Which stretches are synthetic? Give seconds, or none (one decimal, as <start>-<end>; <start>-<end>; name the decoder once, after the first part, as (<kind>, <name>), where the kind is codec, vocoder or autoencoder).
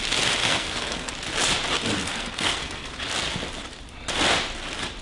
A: 0.4-1.1 (codec, SNAC); 2.0-2.9